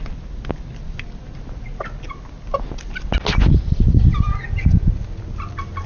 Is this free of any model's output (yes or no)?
yes